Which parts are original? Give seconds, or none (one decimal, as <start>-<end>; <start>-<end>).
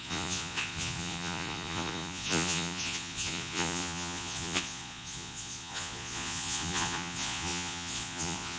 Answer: none